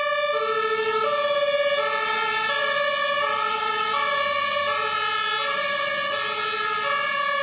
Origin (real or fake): real